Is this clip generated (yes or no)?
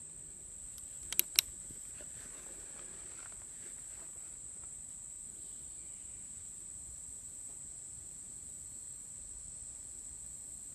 no